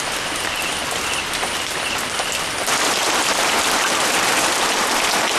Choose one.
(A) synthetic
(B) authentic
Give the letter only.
B